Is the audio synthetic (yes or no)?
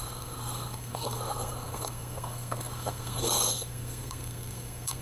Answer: yes